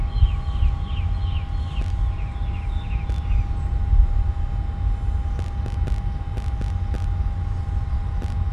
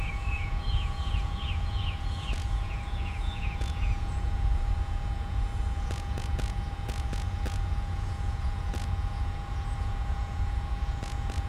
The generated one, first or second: second